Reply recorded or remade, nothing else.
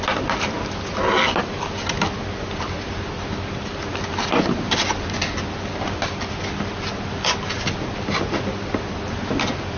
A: recorded